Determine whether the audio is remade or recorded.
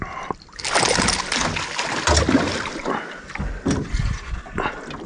recorded